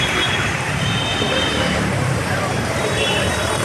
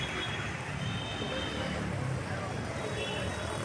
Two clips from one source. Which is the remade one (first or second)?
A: first